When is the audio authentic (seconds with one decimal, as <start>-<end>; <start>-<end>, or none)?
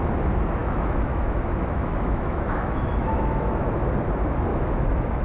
0.0-0.6; 3.7-4.5